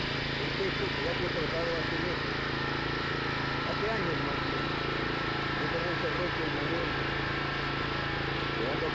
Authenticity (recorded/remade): recorded